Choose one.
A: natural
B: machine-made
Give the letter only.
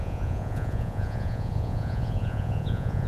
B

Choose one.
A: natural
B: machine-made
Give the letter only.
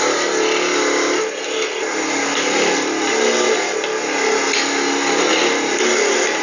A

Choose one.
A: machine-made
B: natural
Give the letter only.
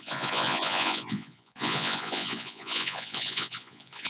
A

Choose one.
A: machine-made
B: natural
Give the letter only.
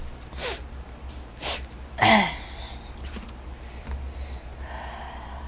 B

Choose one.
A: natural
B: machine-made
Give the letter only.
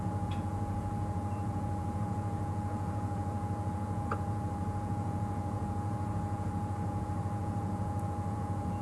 B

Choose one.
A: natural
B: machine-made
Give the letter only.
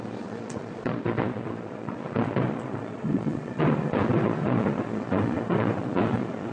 B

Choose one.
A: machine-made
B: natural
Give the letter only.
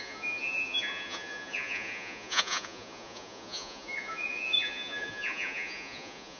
A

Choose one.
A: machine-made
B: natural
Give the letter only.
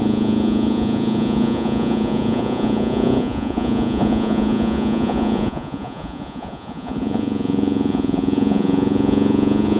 A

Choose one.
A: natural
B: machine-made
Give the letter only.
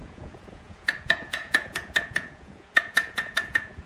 B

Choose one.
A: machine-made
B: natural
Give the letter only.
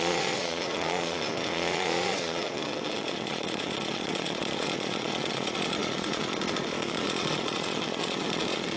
A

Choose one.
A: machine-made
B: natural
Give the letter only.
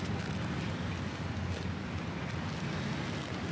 B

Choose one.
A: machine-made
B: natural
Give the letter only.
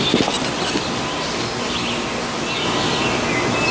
B